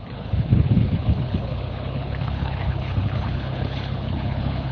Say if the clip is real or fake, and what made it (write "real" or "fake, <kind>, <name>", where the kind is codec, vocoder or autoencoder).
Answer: fake, codec, HILCodec